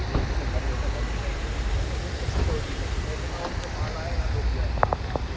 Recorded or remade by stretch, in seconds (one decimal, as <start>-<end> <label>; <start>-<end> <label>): 0.0-5.4 remade